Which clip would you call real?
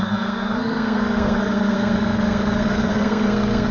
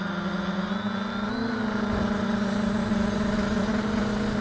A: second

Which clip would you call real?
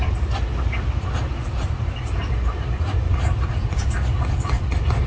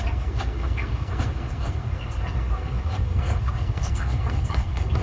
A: first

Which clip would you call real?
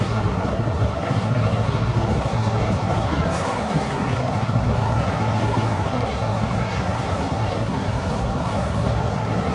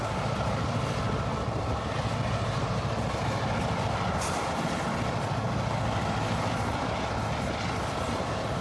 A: second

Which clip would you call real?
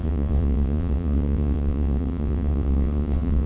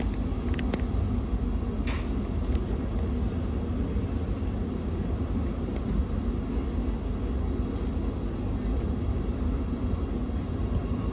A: second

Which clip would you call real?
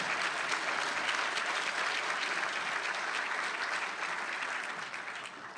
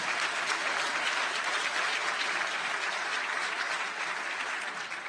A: first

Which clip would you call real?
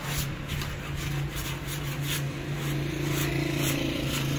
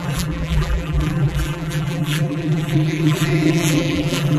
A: first